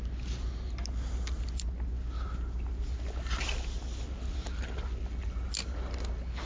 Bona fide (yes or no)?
yes